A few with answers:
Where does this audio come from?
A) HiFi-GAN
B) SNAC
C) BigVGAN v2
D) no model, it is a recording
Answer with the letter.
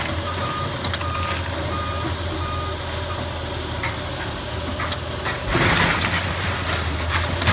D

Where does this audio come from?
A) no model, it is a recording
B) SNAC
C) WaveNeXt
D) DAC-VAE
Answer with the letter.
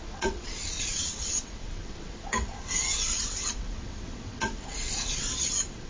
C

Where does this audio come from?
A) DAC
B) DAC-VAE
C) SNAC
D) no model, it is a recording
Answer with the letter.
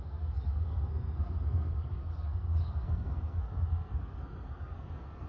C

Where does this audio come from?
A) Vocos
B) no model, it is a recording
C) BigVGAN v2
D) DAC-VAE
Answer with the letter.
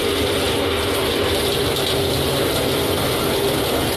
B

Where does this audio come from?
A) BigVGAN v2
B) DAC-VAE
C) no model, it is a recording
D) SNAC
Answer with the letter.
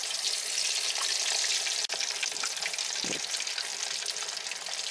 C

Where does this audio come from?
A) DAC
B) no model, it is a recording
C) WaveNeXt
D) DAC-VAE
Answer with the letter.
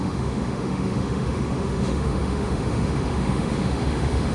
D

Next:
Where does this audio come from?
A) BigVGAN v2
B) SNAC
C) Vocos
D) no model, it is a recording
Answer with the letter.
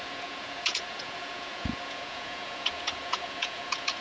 C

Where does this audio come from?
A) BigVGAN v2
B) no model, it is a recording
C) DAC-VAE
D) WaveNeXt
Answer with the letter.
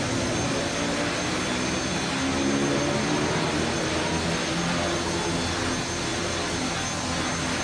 B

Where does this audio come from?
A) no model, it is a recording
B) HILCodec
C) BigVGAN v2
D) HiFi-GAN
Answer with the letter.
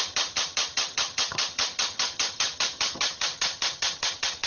D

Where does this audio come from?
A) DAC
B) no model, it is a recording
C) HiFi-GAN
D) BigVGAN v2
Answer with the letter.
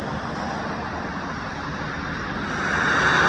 B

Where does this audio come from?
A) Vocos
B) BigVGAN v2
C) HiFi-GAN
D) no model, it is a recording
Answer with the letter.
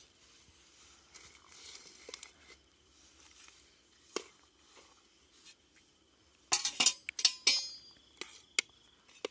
D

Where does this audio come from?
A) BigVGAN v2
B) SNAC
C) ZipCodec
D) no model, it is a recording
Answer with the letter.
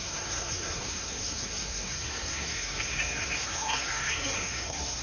B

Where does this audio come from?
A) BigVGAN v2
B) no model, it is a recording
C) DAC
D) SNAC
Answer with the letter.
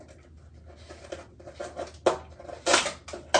B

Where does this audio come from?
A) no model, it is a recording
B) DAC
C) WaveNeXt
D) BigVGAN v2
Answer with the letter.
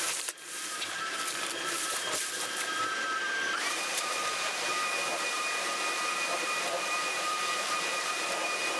D